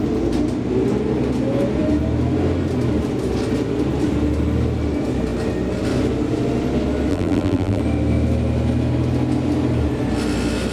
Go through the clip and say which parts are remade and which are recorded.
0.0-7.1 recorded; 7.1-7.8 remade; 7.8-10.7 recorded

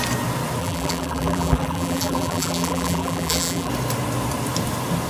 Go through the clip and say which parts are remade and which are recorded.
0.0-0.6 recorded; 0.6-3.7 remade; 3.7-5.1 recorded

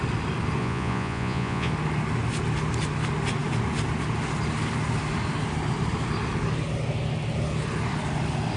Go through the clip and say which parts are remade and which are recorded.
0.0-0.6 recorded; 0.6-1.7 remade; 1.7-8.6 recorded